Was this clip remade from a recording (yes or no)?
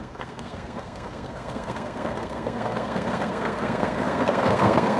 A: yes